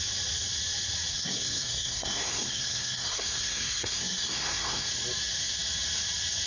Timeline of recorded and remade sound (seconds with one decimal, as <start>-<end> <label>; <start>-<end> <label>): 0.0-1.1 recorded; 1.1-4.9 remade; 4.9-6.5 recorded